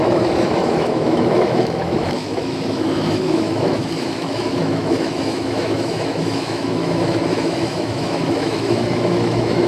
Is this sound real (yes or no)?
no